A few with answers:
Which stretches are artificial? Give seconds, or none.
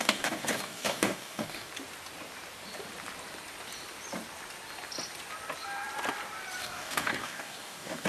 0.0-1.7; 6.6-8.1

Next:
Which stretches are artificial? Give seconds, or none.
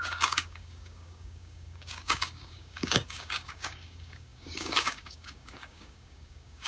0.0-6.7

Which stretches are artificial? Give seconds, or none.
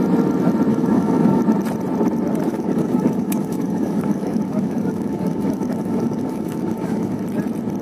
0.7-1.4; 2.5-7.2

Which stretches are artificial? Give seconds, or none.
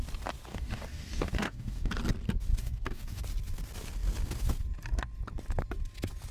0.5-1.9; 2.5-3.2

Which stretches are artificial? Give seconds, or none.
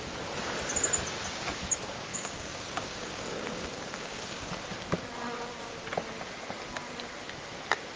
2.1-4.5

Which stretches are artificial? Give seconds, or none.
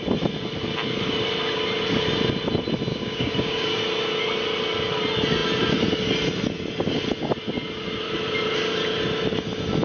2.9-3.8